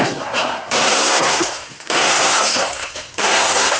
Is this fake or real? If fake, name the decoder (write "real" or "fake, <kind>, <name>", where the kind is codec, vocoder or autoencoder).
fake, codec, SNAC